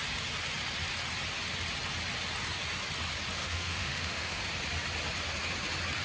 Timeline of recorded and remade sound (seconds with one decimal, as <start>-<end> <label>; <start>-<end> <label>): 0.0-3.4 recorded; 3.4-4.4 remade; 4.4-6.0 recorded